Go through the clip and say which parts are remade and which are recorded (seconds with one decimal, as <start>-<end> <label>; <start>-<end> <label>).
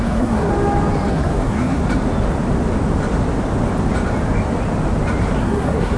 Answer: 0.0-0.5 remade; 0.5-1.1 recorded; 1.1-1.8 remade; 1.8-5.4 recorded; 5.4-6.0 remade